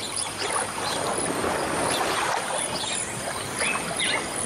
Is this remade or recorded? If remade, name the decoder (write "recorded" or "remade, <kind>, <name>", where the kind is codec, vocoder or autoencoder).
recorded